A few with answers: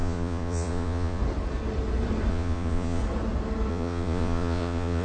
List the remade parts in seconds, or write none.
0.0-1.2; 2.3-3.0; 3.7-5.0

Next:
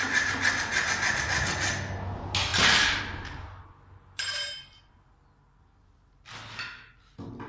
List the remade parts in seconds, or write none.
none

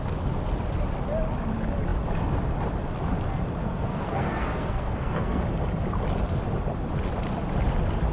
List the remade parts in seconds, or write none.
3.6-5.4

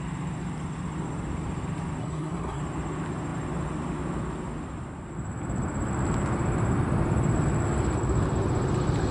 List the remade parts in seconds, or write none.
2.0-2.6

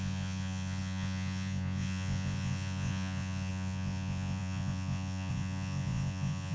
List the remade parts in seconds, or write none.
0.0-6.5

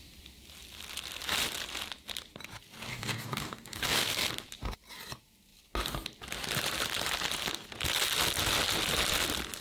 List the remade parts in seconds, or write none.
2.9-4.3